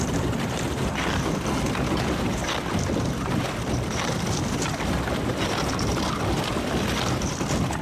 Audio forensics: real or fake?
real